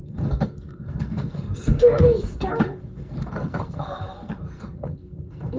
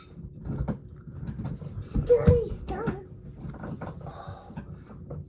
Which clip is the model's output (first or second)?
first